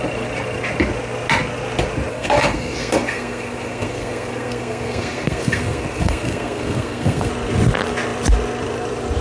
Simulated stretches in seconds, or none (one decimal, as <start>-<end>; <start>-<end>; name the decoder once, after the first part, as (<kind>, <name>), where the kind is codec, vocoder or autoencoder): 2.1-7.3 (codec, SNAC)